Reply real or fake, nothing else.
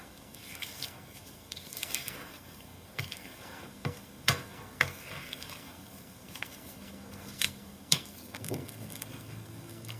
fake